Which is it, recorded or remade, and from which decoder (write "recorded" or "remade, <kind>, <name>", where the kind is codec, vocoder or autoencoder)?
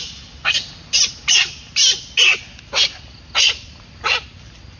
recorded